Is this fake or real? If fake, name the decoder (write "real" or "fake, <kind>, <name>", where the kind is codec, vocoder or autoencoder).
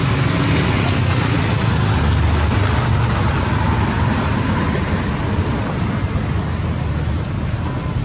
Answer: real